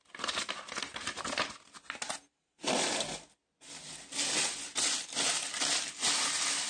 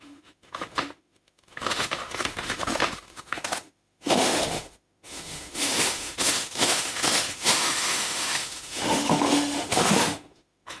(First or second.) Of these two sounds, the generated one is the second